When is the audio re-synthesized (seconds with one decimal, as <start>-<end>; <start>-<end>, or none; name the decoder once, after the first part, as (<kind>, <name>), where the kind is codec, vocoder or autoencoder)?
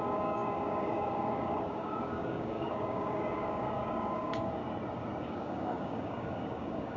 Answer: 0.0-4.6 (codec, DAC); 5.2-7.0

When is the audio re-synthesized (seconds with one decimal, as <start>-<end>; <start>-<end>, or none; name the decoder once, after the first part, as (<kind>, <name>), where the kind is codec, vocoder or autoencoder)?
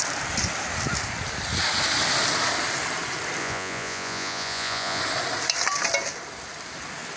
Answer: 3.4-5.0 (vocoder, Vocos)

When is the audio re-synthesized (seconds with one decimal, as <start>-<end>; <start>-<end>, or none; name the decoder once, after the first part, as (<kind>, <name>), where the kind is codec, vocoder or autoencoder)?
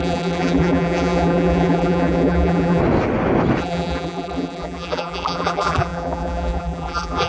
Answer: 0.0-2.8 (vocoder, BigVGAN v2); 3.6-7.3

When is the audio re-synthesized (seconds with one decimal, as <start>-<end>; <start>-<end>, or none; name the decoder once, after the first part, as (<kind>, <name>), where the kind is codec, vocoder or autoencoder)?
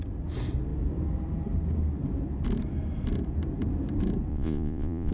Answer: 4.3-5.1 (vocoder, Vocos)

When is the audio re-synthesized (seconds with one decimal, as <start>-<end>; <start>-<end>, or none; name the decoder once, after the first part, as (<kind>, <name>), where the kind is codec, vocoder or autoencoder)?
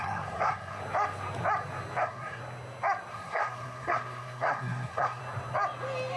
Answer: 0.0-0.8 (codec, SNAC); 2.0-2.4; 3.1-5.2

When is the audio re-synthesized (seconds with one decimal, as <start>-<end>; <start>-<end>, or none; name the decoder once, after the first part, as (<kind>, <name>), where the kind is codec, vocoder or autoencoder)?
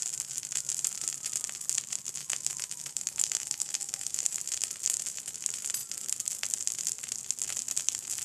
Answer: 2.2-4.2 (autoencoder, DAC-VAE)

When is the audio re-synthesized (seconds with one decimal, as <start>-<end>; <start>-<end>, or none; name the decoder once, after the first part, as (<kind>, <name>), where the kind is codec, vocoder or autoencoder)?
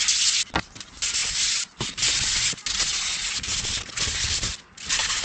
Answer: none